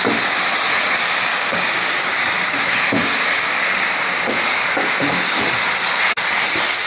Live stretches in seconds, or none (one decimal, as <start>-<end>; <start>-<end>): 0.0-1.3; 5.4-6.9